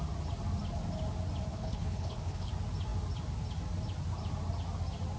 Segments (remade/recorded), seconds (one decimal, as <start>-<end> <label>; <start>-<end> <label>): 0.0-1.5 recorded; 1.5-2.5 remade; 2.5-5.2 recorded